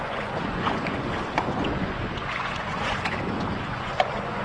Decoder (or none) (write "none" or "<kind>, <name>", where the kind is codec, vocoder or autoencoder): vocoder, Vocos